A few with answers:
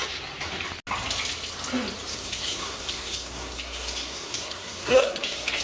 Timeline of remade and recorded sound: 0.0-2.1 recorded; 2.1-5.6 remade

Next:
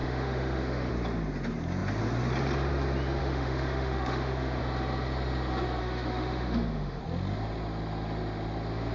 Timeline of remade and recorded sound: 0.0-0.9 remade; 0.9-3.2 recorded; 3.2-4.6 remade; 4.6-5.8 recorded; 5.8-7.0 remade; 7.0-8.9 recorded

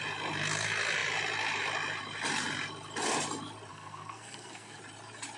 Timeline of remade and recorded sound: 0.0-3.7 recorded; 3.7-4.8 remade; 4.8-5.4 recorded

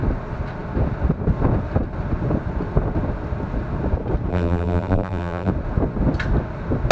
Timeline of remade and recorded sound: 0.0-4.3 recorded; 4.3-5.5 remade; 5.5-6.9 recorded

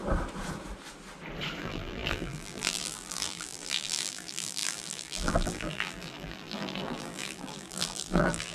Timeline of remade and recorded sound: 0.0-1.6 recorded; 1.6-8.5 remade